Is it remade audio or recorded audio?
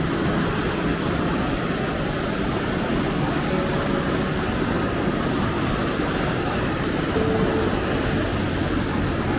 recorded